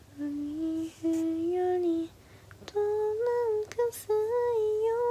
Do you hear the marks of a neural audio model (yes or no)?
no